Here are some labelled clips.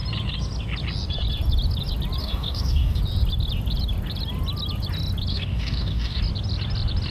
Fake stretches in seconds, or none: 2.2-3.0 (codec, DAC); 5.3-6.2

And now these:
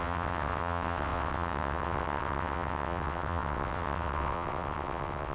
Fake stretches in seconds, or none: 0.0-5.3 (vocoder, WaveNeXt)

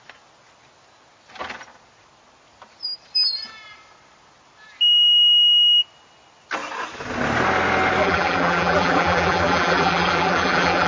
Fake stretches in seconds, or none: 8.0-10.9 (vocoder, BigVGAN v2)

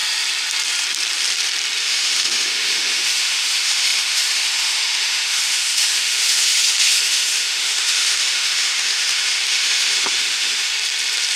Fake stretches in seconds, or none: 1.8-10.7 (autoencoder, DAC-VAE)

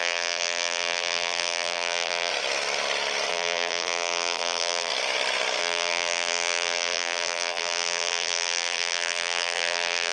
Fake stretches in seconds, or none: 0.0-2.3 (vocoder, BigVGAN v2); 3.3-4.9; 5.6-10.1

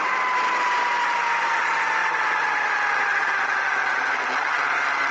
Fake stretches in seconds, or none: none

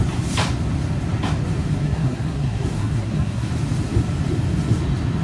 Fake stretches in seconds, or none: 1.7-3.5 (codec, SNAC)

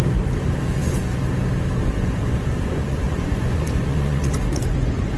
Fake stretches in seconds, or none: 1.8-5.2 (vocoder, Vocos)